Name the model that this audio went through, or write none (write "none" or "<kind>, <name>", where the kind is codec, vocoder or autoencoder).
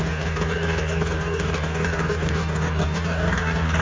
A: codec, DAC